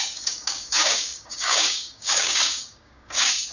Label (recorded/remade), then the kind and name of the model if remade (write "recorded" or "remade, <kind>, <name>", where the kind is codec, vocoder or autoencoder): remade, codec, DAC